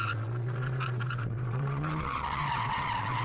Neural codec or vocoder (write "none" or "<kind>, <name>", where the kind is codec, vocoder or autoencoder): vocoder, WaveNeXt